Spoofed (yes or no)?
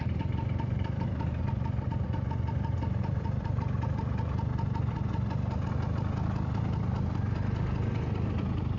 no